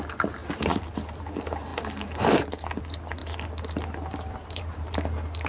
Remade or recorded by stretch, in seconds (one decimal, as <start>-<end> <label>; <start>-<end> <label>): 0.0-0.4 remade; 0.4-1.2 recorded; 1.2-1.7 remade; 1.7-2.8 recorded; 2.8-5.5 remade